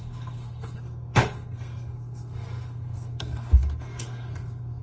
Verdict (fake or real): fake